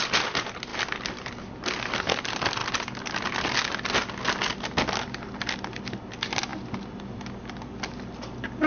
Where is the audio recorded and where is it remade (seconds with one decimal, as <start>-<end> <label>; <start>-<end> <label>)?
0.0-8.7 recorded